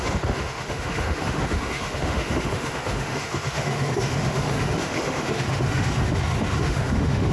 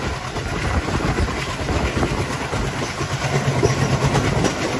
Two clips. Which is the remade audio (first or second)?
first